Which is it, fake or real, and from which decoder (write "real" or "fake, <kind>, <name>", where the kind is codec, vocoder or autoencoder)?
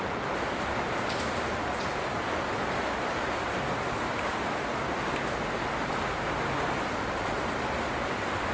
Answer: real